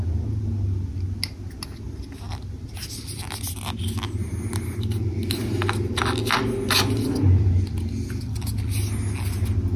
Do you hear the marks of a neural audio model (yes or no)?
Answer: no